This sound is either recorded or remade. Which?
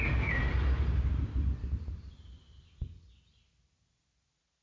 recorded